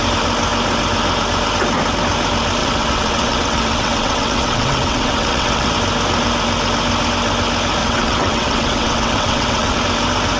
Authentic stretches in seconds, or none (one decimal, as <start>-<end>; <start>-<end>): 0.0-2.6; 5.7-7.8; 9.8-10.4

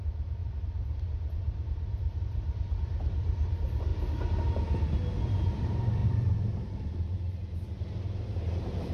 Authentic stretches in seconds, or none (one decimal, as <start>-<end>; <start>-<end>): 3.9-5.5

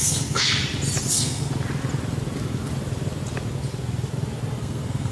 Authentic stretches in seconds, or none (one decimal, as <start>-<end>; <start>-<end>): 0.6-1.1; 1.5-4.6

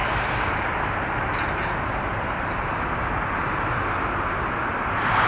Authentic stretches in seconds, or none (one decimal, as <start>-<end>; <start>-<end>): 0.0-5.3

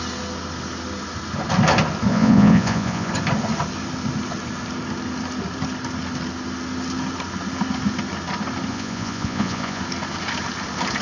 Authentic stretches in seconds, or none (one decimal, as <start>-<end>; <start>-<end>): 0.0-2.1; 3.1-8.7; 9.8-11.0

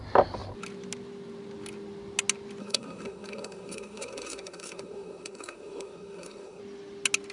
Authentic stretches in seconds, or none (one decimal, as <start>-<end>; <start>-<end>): 0.0-2.6; 6.6-7.3

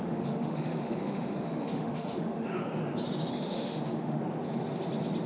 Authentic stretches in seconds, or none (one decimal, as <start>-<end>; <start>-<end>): 2.5-3.3; 4.2-5.3

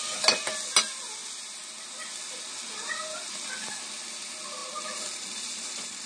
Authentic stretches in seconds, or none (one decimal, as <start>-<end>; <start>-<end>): 0.0-6.1